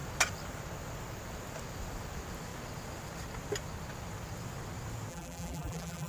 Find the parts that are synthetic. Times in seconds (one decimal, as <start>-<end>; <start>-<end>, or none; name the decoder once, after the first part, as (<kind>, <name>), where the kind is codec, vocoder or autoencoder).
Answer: 5.1-6.1 (vocoder, BigVGAN v2)